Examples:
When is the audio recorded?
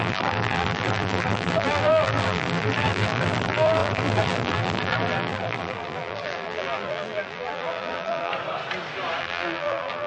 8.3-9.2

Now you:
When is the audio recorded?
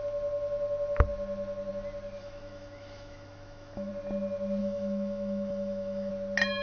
0.0-2.2; 3.9-4.6; 6.1-6.6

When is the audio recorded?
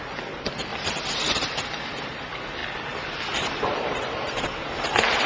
0.0-0.7; 1.3-2.6; 4.7-5.3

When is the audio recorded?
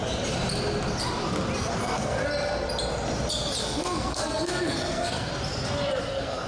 0.0-1.6; 2.2-3.6; 5.3-6.0